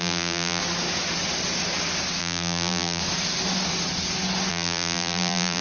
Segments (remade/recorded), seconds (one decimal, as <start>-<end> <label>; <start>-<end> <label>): 0.0-0.6 remade; 0.6-2.2 recorded; 2.2-3.0 remade; 3.0-4.5 recorded; 4.5-5.6 remade

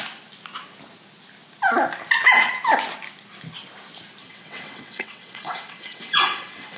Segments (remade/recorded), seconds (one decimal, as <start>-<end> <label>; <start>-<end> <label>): 0.0-4.2 recorded; 4.2-6.8 remade

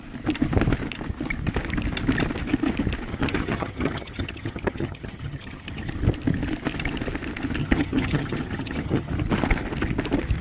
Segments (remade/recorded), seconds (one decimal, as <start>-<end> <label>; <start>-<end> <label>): 0.0-3.1 recorded; 3.1-5.9 remade; 5.9-7.6 recorded; 7.6-9.1 remade; 9.1-10.4 recorded